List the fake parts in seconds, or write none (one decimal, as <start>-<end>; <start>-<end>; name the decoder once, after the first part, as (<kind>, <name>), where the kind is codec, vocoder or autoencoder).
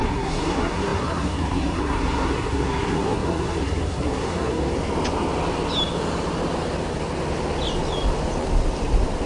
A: 0.0-4.7 (codec, SNAC)